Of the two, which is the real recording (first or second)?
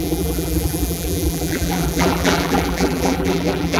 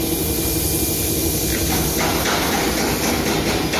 second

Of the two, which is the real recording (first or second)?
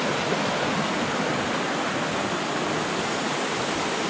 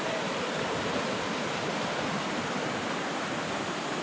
first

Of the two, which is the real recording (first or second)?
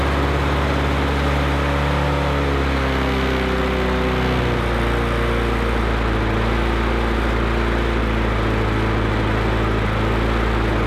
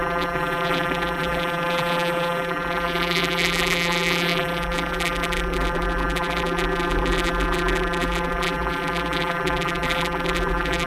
first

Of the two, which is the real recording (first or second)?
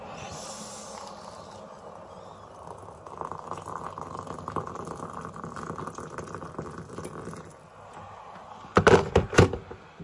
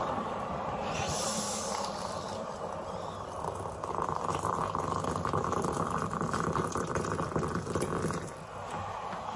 first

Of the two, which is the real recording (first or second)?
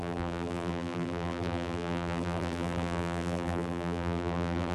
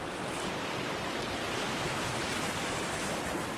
second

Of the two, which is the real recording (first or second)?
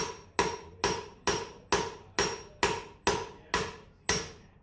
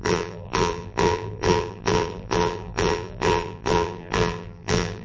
first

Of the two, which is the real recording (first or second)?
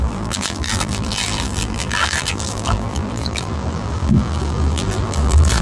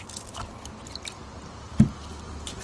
second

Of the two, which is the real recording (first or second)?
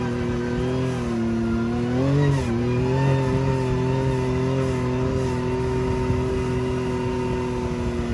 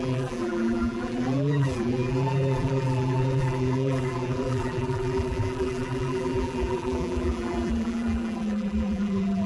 first